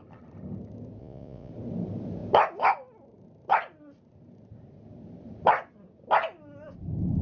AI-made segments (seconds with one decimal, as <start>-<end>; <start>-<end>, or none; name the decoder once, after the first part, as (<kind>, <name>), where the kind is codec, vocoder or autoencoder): 1.0-1.5 (vocoder, Vocos)